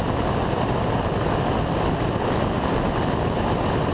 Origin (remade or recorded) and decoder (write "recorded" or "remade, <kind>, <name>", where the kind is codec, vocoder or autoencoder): recorded